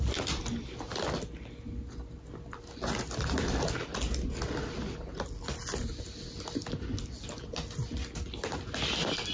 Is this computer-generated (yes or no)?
no